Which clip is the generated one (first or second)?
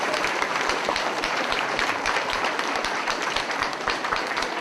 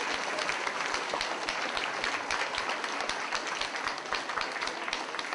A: first